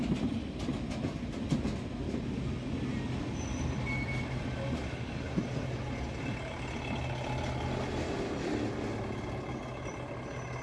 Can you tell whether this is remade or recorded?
recorded